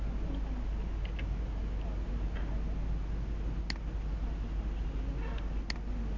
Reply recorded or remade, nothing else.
recorded